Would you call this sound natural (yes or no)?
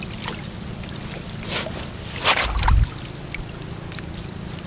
yes